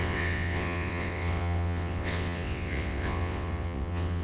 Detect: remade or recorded remade